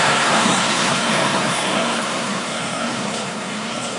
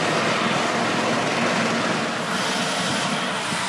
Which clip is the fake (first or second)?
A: first